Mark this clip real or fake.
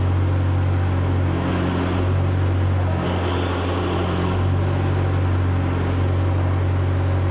real